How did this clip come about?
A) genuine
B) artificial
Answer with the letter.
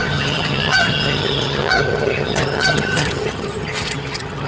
B